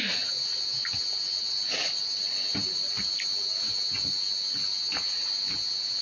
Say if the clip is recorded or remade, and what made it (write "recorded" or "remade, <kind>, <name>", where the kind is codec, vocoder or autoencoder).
recorded